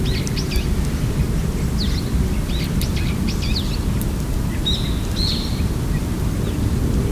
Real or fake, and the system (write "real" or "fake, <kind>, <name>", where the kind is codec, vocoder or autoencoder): real